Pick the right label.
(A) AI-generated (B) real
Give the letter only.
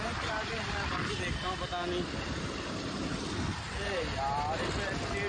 B